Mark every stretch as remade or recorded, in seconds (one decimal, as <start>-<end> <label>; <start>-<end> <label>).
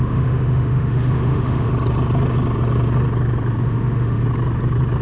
0.0-1.7 remade; 1.7-3.6 recorded; 3.6-4.2 remade; 4.2-5.0 recorded